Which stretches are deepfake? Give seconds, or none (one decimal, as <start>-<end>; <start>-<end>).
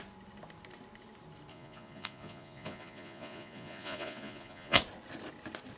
1.5-4.8